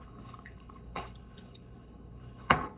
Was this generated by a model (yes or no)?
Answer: yes